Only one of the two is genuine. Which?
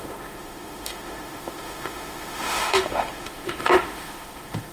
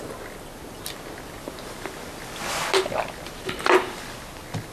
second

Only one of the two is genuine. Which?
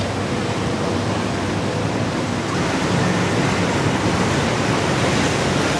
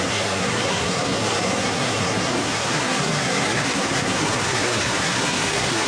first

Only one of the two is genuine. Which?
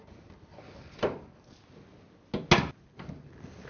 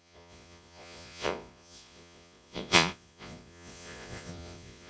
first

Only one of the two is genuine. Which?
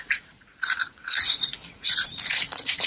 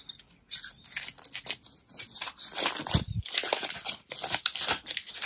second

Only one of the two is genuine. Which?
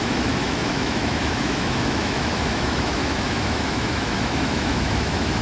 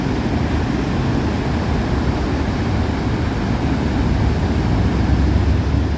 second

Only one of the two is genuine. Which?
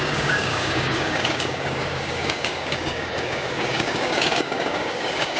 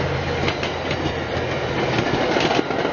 second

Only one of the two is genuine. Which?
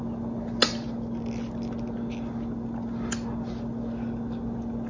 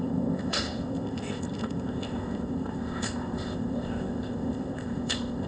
first